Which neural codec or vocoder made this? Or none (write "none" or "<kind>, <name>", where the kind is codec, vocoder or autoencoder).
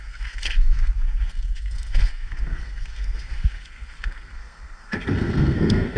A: codec, SNAC